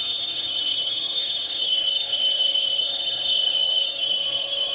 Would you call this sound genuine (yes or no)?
no